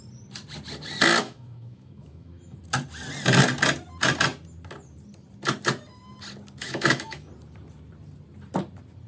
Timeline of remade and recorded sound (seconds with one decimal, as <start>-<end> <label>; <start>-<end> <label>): 0.0-1.2 recorded; 1.2-2.6 remade; 2.6-6.6 recorded; 6.6-7.3 remade; 7.3-9.1 recorded

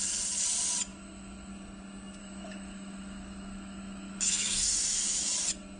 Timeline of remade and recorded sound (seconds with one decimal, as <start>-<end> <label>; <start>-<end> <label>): 0.0-0.9 recorded; 0.9-1.5 remade; 1.5-2.2 recorded; 2.2-5.3 remade; 5.3-5.8 recorded

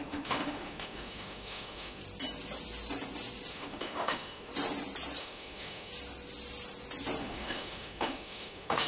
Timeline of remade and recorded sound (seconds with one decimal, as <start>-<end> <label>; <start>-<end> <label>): 0.0-2.0 remade; 2.0-3.5 recorded; 3.5-4.5 remade; 4.5-5.2 recorded; 5.2-5.9 remade; 5.9-7.2 recorded; 7.2-8.9 remade

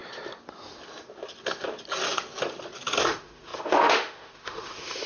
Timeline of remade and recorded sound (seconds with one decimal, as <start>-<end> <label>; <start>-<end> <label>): 0.0-3.0 recorded; 3.0-5.1 remade

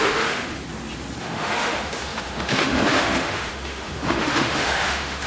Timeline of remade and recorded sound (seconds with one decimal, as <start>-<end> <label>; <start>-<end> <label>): 0.0-0.6 remade; 0.6-1.2 recorded; 1.2-5.3 remade